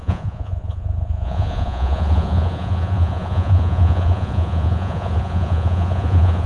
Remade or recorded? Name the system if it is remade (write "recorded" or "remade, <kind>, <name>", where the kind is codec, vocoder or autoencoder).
remade, vocoder, Vocos